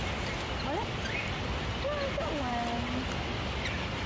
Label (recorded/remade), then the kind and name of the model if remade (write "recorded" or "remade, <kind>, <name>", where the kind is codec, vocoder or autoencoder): recorded